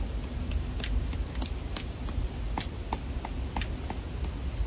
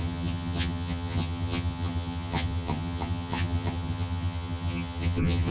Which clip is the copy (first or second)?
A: second